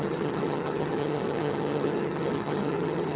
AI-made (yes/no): yes